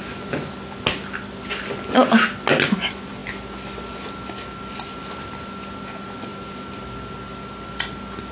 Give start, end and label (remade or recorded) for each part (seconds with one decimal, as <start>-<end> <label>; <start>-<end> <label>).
0.0-8.3 recorded